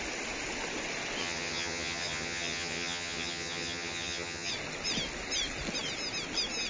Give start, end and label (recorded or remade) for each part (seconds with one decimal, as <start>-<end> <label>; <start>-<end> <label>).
0.0-1.2 recorded; 1.2-4.5 remade; 4.5-6.7 recorded